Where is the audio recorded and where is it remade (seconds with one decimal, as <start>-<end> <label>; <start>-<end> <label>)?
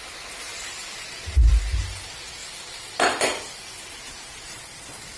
0.0-5.2 recorded